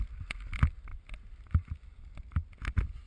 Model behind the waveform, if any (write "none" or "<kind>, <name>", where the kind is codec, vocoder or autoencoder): none